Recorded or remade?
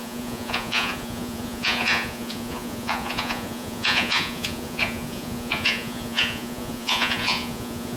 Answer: remade